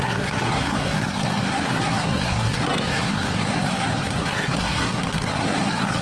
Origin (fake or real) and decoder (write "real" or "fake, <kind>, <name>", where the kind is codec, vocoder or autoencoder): fake, codec, SNAC